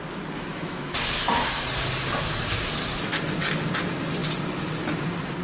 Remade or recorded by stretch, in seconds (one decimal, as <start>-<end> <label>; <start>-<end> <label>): 0.0-0.5 recorded; 0.5-1.3 remade; 1.3-5.4 recorded